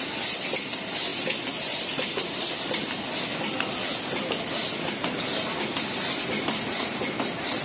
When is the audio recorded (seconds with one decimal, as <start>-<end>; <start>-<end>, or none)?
0.0-7.6